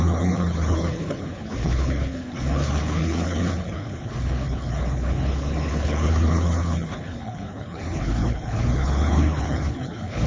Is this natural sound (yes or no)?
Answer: no